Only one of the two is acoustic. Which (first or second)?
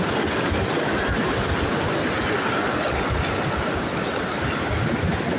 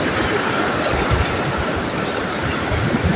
first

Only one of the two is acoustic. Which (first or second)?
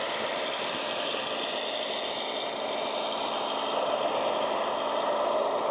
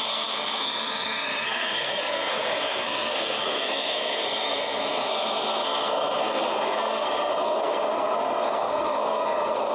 first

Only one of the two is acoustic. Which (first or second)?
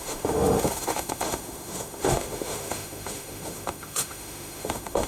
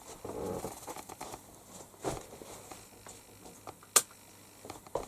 second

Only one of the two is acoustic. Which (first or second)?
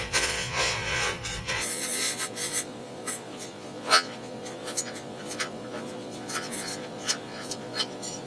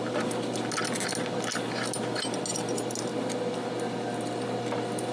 second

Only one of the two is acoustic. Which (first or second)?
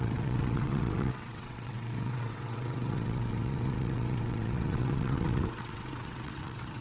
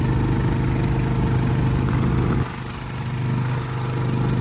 second